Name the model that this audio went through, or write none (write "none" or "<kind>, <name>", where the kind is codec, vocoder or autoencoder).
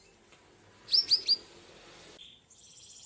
none